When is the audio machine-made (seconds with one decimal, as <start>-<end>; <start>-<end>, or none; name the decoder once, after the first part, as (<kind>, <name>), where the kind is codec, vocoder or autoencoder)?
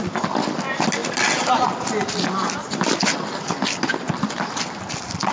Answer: none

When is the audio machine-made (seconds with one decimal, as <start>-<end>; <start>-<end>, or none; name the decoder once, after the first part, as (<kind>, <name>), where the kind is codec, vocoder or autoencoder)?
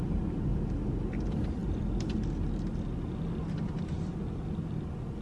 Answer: none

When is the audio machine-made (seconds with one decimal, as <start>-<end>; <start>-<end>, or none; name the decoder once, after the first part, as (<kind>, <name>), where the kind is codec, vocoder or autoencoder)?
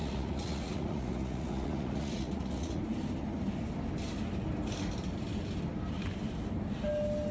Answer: 0.0-2.8 (vocoder, Vocos)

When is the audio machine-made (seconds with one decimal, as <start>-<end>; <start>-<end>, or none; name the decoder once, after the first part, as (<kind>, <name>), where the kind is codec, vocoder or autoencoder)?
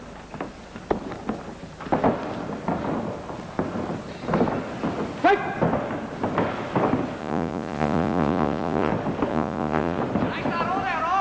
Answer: 7.2-8.9 (vocoder, Vocos); 9.3-10.0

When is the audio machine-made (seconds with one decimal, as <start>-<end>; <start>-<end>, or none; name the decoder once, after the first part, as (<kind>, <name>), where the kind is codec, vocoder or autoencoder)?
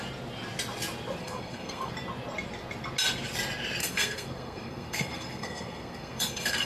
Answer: 1.2-1.9 (codec, SNAC); 3.8-6.7